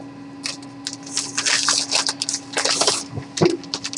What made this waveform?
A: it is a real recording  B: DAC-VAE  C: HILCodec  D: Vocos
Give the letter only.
A